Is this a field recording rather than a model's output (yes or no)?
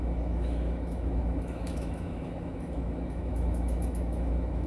no